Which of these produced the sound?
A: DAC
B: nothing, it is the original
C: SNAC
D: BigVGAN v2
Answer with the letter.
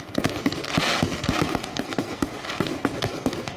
C